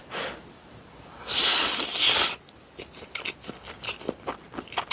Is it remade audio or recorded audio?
recorded